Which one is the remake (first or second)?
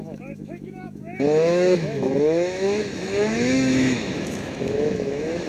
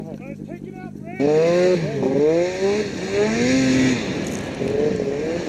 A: first